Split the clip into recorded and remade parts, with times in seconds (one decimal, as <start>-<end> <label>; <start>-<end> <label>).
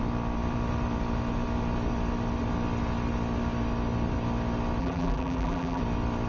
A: 0.0-4.8 recorded; 4.8-5.8 remade; 5.8-6.3 recorded